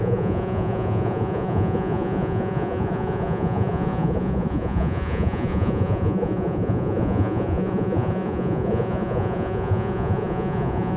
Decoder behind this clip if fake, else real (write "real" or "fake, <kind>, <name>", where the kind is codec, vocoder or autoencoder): fake, vocoder, Vocos